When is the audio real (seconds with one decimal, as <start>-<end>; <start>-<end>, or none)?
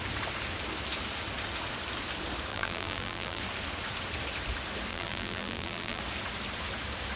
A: 0.0-2.5; 3.4-4.9; 6.0-7.2